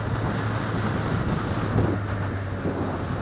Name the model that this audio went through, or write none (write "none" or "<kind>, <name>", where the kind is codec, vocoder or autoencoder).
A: none